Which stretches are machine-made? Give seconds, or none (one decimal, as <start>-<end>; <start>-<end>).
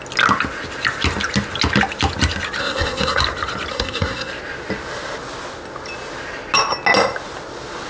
2.6-3.2; 3.7-4.3